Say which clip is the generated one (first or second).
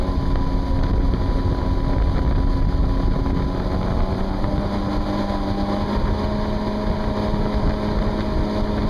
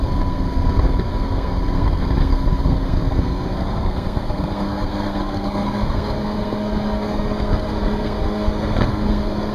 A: second